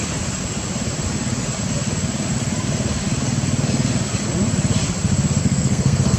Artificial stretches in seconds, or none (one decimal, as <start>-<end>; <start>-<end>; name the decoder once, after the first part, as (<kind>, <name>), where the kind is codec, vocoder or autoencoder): 5.4-6.2 (codec, SNAC)